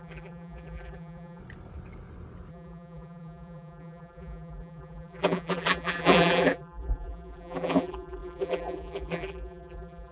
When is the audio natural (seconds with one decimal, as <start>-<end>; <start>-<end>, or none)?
1.4-2.5